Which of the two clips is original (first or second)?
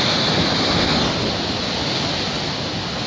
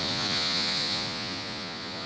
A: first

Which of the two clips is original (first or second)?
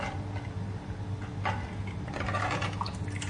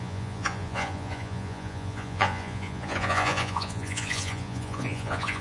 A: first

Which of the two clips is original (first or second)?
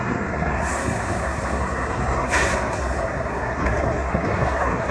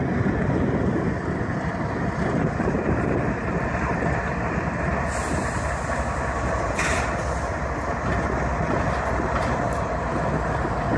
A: second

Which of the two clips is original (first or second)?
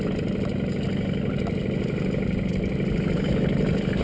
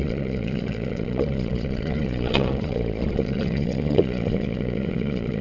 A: first